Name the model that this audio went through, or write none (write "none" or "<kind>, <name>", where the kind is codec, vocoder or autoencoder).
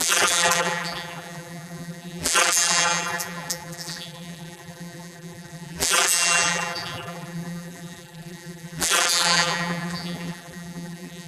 vocoder, BigVGAN v2